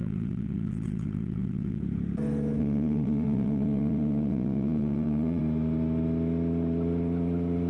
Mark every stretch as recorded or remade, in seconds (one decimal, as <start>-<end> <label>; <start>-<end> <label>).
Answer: 0.0-1.8 remade; 1.8-2.6 recorded; 2.6-5.4 remade; 5.4-7.7 recorded